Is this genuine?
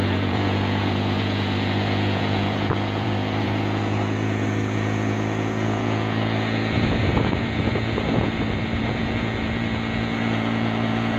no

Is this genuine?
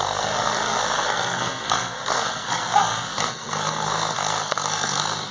no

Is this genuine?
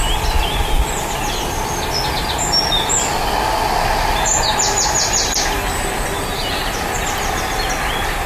yes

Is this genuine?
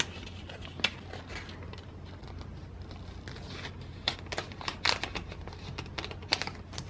yes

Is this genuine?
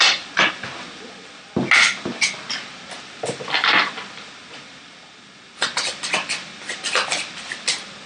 yes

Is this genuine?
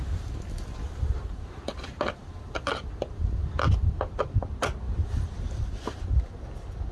yes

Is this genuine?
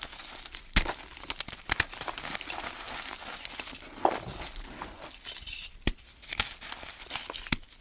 yes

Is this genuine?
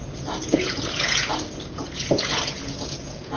no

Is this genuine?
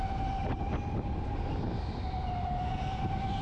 yes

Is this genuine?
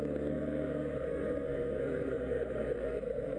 no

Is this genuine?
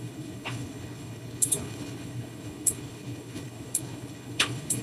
no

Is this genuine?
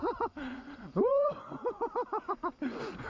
no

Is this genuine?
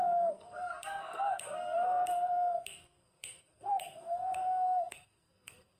no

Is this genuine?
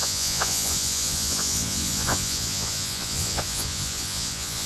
no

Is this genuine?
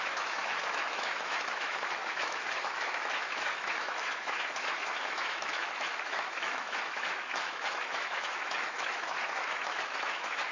no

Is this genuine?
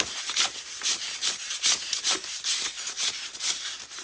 no